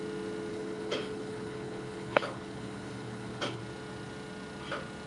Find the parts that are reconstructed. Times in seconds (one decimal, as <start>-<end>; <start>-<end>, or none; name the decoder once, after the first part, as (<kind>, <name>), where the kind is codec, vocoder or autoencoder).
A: 0.5-3.6 (codec, HILCodec)

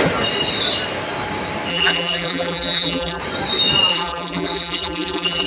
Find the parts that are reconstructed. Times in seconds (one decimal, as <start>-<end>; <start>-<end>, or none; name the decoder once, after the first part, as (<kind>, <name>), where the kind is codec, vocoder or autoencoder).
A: 1.7-3.2 (vocoder, BigVGAN v2); 3.9-5.5

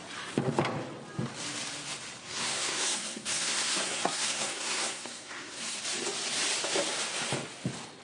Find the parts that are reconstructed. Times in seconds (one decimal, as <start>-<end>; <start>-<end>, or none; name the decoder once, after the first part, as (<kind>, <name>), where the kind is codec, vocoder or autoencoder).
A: 2.2-5.8 (codec, SNAC)

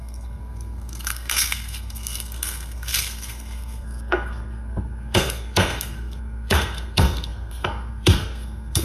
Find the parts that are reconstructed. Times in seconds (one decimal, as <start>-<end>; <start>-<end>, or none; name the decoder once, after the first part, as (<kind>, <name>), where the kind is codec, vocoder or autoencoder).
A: 0.0-8.8 (codec, SNAC)

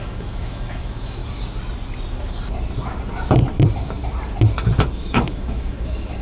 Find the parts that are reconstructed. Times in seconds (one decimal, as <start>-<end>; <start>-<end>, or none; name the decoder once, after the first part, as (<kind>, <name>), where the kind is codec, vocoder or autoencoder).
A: 0.0-1.2 (autoencoder, DAC-VAE); 4.9-6.2

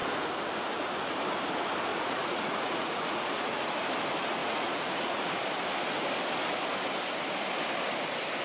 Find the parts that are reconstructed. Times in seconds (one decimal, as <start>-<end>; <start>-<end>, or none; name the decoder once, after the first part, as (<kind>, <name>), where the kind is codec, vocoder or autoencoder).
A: 1.9-3.7 (vocoder, Vocos); 4.4-5.3

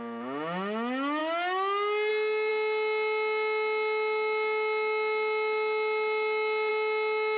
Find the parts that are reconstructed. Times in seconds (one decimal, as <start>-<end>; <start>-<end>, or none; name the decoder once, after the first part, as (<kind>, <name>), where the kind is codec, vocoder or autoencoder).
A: none

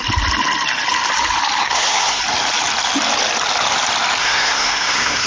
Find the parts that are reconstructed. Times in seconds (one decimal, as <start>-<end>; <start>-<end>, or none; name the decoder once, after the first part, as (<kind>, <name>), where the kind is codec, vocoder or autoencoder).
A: 1.6-2.2 (codec, SNAC); 4.2-5.3